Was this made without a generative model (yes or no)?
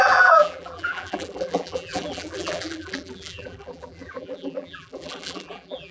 no